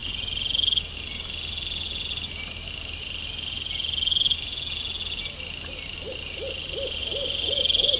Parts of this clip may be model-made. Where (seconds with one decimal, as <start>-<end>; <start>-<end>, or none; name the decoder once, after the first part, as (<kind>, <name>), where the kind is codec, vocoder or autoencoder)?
none